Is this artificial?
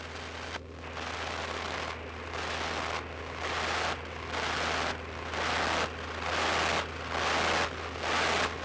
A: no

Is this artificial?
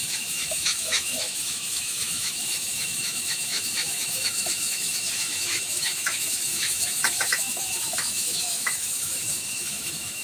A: yes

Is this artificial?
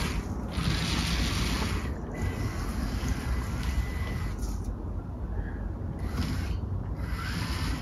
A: no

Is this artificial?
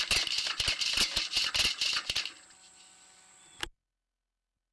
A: no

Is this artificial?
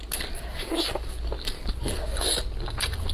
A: no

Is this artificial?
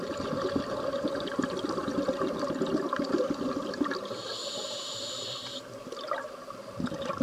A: no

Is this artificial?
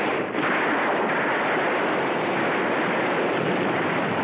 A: no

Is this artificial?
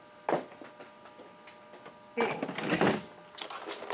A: no